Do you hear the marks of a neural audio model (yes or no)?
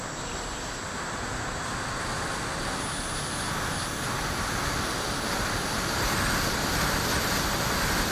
no